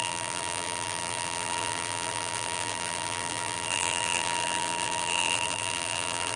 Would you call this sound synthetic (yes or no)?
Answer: yes